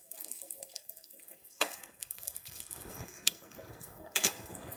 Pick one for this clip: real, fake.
fake